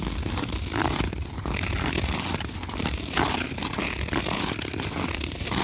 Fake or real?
real